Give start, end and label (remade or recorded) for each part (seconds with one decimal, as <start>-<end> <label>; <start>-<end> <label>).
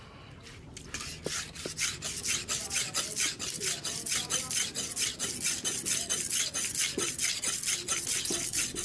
0.0-8.8 recorded